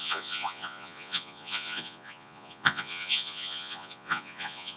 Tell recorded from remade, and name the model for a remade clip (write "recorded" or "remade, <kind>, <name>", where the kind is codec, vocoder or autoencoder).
remade, vocoder, Vocos